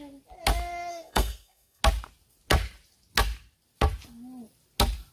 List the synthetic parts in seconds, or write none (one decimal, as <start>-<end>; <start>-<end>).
0.9-1.8